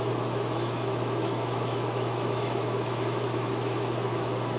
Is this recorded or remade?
remade